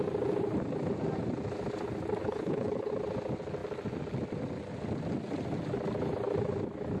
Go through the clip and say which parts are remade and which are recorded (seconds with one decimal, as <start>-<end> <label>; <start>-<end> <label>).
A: 0.0-2.2 recorded; 2.2-2.9 remade; 2.9-7.0 recorded